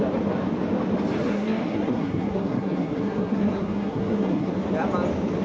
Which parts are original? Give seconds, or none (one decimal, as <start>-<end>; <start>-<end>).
0.0-1.3; 4.5-5.4